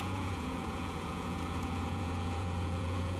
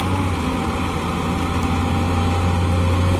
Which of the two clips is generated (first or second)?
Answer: first